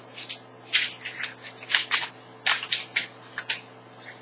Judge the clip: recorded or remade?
recorded